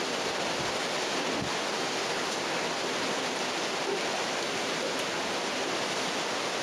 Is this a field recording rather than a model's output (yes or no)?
yes